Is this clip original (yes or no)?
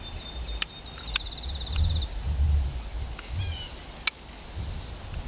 yes